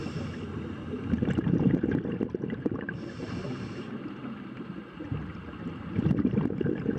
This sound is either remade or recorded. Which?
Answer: recorded